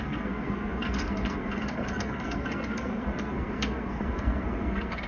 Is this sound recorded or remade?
remade